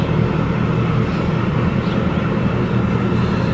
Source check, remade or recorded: recorded